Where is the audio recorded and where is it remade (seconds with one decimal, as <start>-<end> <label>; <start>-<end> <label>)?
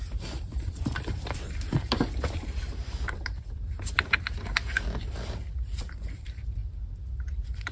0.0-3.9 remade; 3.9-5.5 recorded; 5.5-6.6 remade; 6.6-7.2 recorded; 7.2-7.7 remade